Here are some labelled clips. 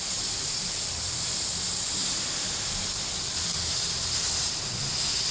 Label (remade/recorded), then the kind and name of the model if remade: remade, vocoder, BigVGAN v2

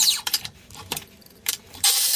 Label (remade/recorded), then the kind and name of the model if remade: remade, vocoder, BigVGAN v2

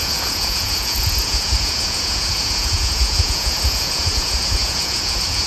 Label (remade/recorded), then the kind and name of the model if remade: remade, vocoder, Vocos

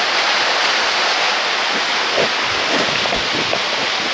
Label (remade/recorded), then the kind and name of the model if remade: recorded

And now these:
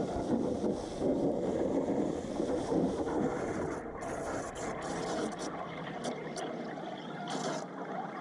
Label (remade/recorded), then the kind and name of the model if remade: recorded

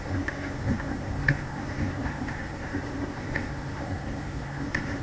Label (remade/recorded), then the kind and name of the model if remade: remade, codec, SNAC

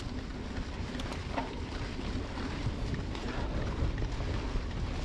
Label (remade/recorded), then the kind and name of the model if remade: recorded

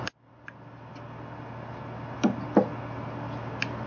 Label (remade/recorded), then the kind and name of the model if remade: recorded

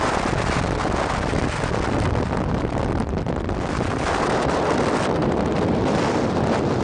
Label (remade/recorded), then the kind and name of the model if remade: recorded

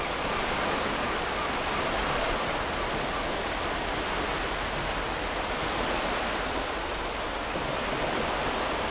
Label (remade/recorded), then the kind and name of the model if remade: recorded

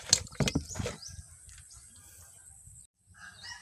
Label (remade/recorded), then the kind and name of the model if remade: recorded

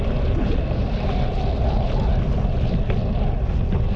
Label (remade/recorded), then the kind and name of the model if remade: recorded